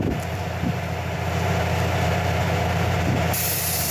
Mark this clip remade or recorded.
remade